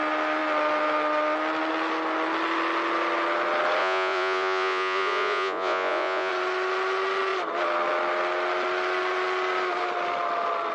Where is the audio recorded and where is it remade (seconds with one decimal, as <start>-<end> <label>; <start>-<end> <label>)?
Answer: 0.0-3.8 recorded; 3.8-6.3 remade; 6.3-10.7 recorded